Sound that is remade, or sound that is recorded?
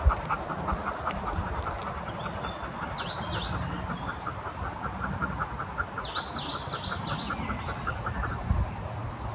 recorded